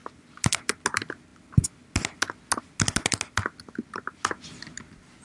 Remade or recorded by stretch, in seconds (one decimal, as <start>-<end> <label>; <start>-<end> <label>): 0.0-5.2 recorded